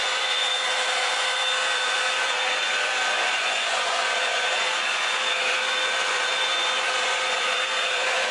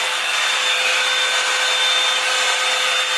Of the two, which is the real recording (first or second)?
second